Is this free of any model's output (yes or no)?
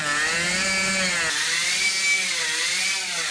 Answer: yes